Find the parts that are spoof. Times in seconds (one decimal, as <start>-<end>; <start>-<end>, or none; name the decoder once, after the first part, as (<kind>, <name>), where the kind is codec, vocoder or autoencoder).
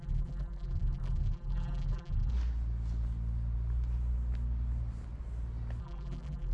0.0-2.3 (vocoder, BigVGAN v2); 5.8-6.5